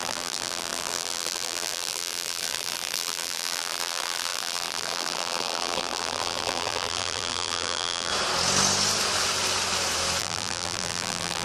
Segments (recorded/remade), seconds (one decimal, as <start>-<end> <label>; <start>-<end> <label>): 0.0-8.1 remade; 8.1-10.2 recorded; 10.2-11.4 remade